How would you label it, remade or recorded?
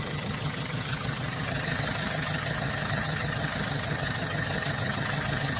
remade